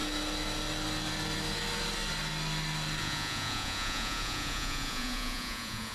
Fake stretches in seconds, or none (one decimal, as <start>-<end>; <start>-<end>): 3.0-5.9